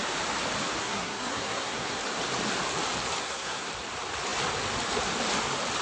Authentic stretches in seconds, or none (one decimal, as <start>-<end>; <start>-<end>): 0.0-0.8; 2.0-3.2; 3.7-5.8

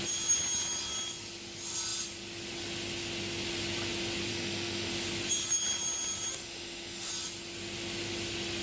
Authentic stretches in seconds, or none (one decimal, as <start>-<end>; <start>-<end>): 0.0-4.3; 4.9-6.3; 7.1-8.6

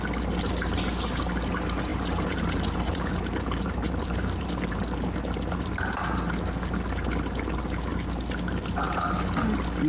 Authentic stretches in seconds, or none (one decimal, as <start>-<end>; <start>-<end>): 0.0-1.9; 4.8-9.9

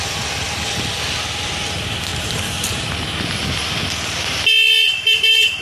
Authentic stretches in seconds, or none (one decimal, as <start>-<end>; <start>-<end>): 0.0-2.1; 2.8-5.6

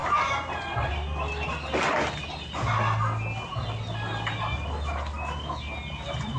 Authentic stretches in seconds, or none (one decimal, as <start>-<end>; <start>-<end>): 0.0-6.4

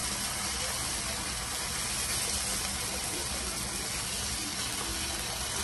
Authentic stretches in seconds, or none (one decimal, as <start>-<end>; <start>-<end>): 0.0-5.6

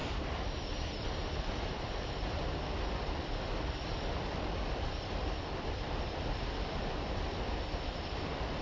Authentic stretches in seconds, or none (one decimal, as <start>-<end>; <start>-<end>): none